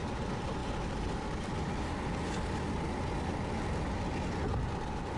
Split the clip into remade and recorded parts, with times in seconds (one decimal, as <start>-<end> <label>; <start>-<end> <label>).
0.0-5.2 recorded